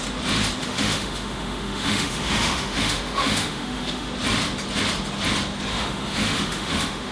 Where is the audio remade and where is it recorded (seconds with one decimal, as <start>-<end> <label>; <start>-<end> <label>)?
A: 0.0-0.6 recorded; 0.6-4.1 remade; 4.1-5.7 recorded; 5.7-7.1 remade